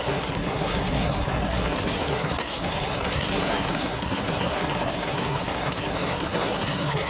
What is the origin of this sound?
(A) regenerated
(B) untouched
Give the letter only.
A